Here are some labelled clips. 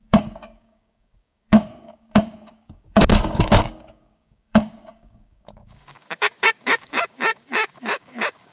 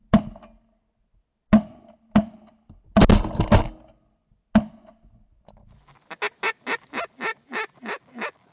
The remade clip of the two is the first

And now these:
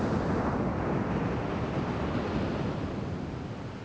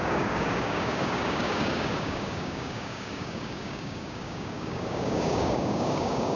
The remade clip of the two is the second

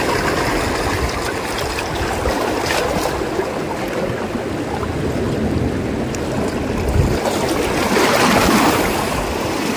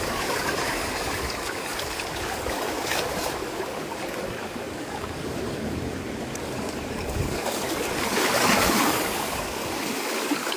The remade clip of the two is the second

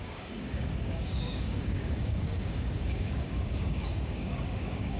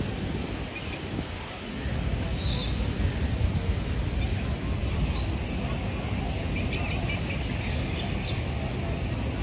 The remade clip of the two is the first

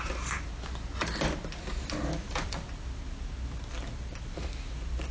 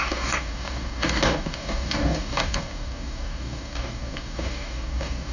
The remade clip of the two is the second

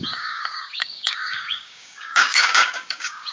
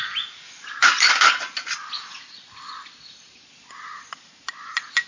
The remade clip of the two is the first